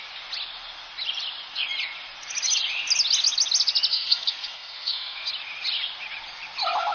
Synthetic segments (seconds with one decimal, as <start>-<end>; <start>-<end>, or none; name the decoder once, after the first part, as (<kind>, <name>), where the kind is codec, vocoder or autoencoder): 3.9-5.3 (codec, SNAC)